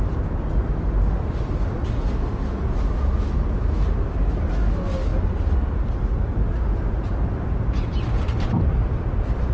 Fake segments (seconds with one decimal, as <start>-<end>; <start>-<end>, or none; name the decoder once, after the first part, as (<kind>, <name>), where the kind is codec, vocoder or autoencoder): none